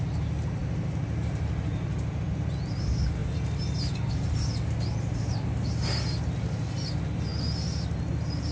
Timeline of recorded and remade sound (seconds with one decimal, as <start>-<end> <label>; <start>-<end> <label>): 0.0-8.5 recorded